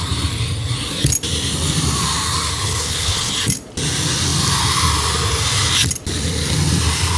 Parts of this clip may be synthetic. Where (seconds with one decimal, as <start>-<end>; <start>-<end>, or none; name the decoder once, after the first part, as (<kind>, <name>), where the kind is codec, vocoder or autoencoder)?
2.6-3.3 (codec, HILCodec)